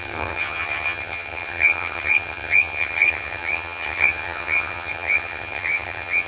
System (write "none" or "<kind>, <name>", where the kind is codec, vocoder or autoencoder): vocoder, HiFi-GAN